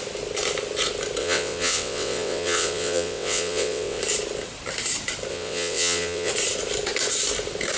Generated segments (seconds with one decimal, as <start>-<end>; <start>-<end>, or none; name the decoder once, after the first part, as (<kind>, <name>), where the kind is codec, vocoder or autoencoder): 1.2-4.0 (vocoder, WaveNeXt); 5.3-6.3